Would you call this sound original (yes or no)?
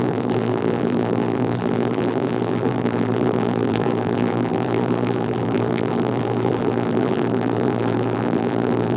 no